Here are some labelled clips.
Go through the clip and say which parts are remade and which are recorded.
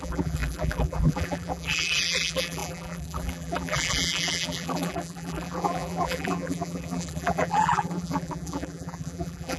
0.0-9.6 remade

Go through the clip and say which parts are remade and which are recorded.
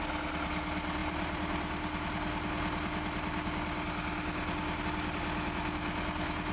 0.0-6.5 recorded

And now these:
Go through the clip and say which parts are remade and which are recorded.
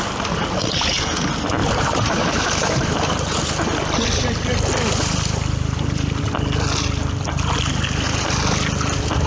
0.0-1.6 recorded; 1.6-3.4 remade; 3.4-9.3 recorded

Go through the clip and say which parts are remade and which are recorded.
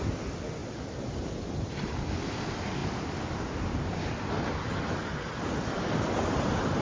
0.0-0.6 recorded; 0.6-2.1 remade; 2.1-6.8 recorded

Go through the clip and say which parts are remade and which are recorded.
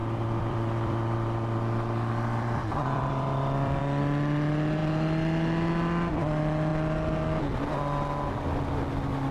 0.0-3.8 remade; 3.8-9.3 recorded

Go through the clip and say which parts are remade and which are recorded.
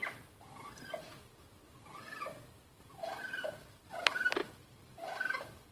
0.0-1.9 recorded; 1.9-3.6 remade; 3.6-4.4 recorded; 4.4-5.7 remade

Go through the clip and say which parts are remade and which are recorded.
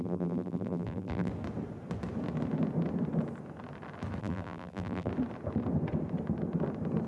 0.0-1.3 remade; 1.3-4.2 recorded; 4.2-5.1 remade; 5.1-7.1 recorded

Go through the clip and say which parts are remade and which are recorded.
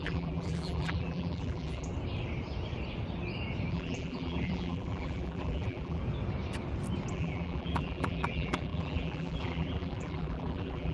0.0-1.9 remade; 1.9-3.7 recorded; 3.7-6.0 remade; 6.0-7.1 recorded; 7.1-10.9 remade